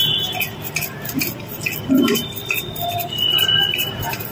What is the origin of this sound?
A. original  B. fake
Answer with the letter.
A